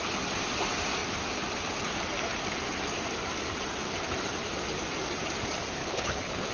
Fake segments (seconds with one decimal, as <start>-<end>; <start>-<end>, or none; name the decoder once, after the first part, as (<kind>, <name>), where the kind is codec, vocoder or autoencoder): 5.8-6.5 (codec, HILCodec)